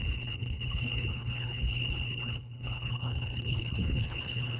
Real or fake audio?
fake